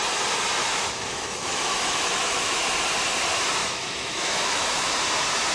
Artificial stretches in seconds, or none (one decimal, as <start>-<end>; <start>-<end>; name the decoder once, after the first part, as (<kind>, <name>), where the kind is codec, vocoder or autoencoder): 0.6-2.8 (autoencoder, DAC-VAE); 3.6-4.9